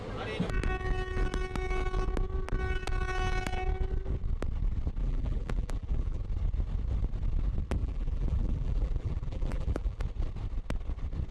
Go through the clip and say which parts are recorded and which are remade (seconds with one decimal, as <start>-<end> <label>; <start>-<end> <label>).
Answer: 0.0-5.0 recorded; 5.0-6.2 remade; 6.2-7.8 recorded; 7.8-10.0 remade; 10.0-11.3 recorded